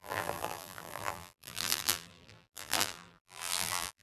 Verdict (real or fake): fake